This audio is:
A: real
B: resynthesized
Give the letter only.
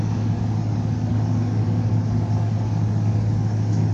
B